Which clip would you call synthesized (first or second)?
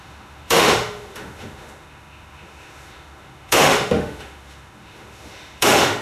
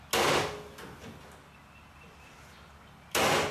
first